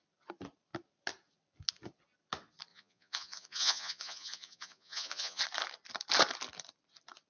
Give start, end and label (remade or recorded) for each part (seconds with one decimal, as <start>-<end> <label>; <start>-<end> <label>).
0.0-2.7 recorded; 2.7-5.4 remade; 5.4-7.3 recorded